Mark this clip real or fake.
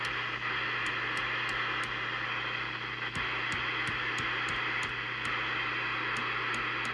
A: real